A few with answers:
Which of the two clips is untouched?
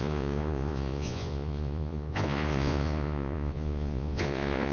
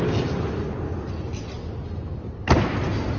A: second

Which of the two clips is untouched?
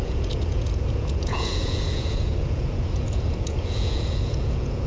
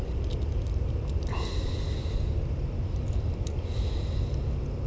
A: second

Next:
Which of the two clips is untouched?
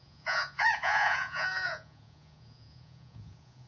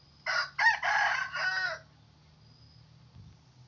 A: second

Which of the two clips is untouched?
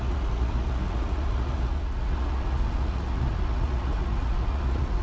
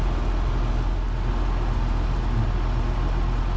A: second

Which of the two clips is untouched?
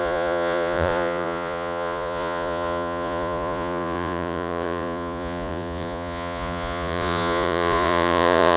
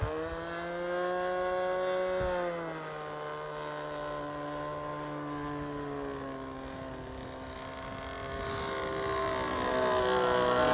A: second